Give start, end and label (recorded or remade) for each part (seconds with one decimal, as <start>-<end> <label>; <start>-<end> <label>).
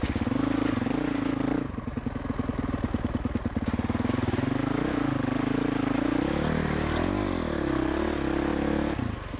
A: 0.0-9.4 recorded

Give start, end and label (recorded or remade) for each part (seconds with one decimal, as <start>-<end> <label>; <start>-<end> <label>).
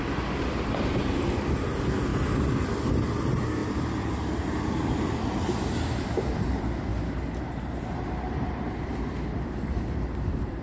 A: 0.0-2.1 remade; 2.1-2.9 recorded; 2.9-10.6 remade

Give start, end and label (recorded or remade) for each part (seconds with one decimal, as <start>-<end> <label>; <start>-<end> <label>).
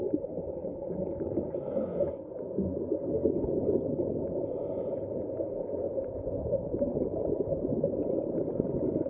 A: 0.0-0.6 recorded; 0.6-2.1 remade; 2.1-9.1 recorded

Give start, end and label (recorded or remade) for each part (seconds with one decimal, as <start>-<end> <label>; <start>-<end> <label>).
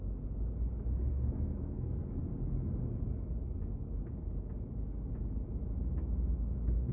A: 0.0-1.1 recorded; 1.1-1.8 remade; 1.8-6.9 recorded